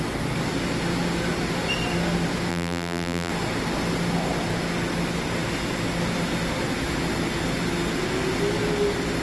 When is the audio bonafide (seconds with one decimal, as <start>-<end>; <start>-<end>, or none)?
0.0-2.5; 3.3-9.2